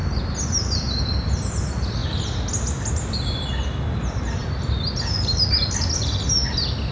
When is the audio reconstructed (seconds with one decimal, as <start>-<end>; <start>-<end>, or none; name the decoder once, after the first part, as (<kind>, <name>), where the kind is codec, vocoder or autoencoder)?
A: none